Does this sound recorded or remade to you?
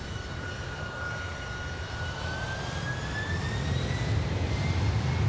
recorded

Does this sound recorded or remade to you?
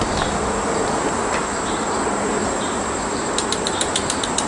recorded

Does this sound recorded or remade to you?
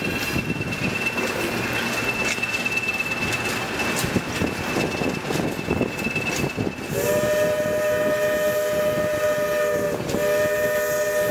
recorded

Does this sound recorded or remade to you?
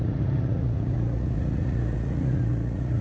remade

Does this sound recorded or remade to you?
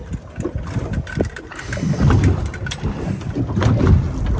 recorded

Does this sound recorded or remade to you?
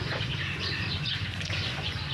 remade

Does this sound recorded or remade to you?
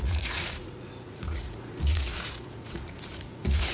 remade